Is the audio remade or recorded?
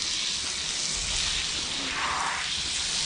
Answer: recorded